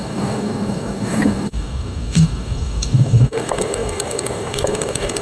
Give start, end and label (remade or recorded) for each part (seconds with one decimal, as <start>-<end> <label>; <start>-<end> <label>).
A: 0.0-5.2 remade